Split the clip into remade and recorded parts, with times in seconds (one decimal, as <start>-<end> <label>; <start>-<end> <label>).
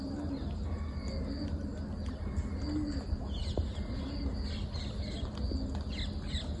0.0-6.6 recorded